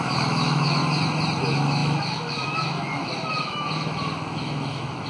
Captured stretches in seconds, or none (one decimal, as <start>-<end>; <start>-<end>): 0.8-1.4